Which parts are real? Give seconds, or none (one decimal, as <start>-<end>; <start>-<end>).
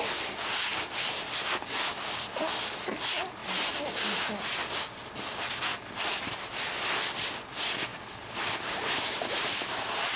0.0-3.4; 4.2-7.9